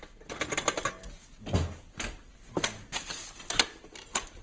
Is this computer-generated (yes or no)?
no